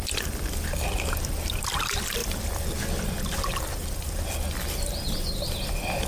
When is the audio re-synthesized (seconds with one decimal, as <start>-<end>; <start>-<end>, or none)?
none